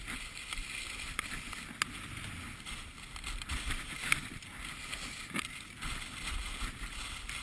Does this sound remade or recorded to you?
recorded